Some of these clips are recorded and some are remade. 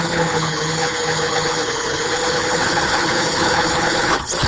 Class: remade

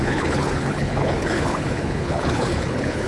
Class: remade